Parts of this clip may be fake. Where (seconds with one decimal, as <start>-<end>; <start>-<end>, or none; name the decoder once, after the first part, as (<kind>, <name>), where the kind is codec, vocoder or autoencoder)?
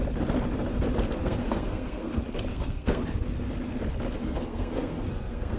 1.2-2.1 (codec, SNAC); 2.5-3.0; 4.2-5.6